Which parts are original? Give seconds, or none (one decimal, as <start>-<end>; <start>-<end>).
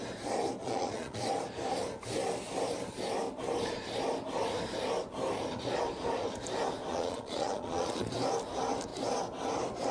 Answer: 0.0-0.6; 1.2-6.9; 8.1-9.9